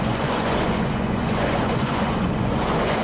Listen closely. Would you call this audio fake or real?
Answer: fake